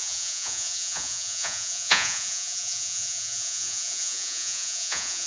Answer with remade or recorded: remade